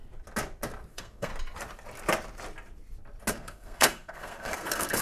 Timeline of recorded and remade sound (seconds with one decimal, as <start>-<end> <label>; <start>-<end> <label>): 0.0-0.9 recorded; 0.9-1.3 remade; 1.3-3.3 recorded; 3.3-5.0 remade